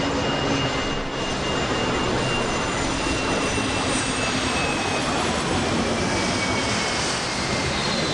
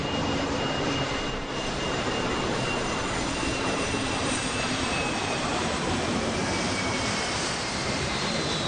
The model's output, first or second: second